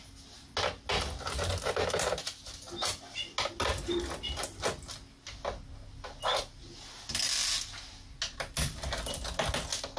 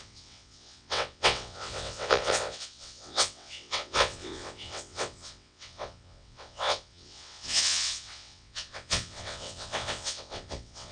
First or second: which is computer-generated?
second